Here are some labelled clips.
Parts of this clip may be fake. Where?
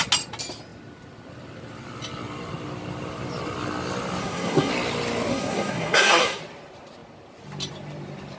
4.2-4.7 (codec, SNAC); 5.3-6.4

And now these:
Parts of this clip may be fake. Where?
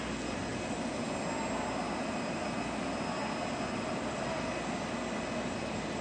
none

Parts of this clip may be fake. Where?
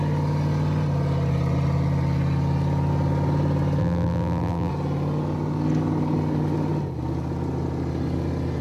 3.8-4.7 (vocoder, BigVGAN v2)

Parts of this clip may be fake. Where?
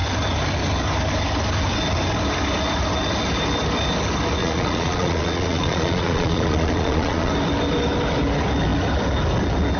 4.4-7.3 (vocoder, Vocos)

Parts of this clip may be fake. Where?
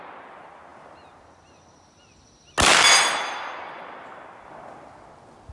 none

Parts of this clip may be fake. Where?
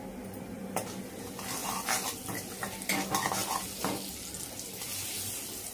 none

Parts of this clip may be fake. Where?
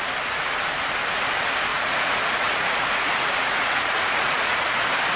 1.7-4.8 (vocoder, Vocos)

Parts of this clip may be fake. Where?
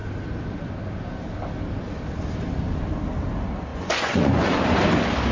3.7-4.6 (vocoder, Vocos)